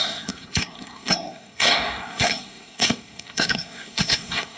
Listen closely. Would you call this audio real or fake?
fake